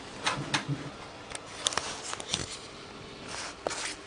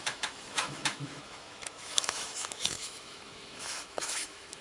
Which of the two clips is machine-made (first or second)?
second